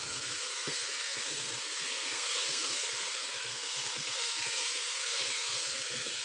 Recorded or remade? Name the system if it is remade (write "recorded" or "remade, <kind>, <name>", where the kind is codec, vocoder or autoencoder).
remade, codec, SNAC